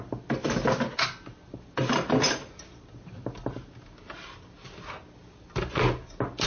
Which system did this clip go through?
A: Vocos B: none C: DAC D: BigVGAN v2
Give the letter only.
B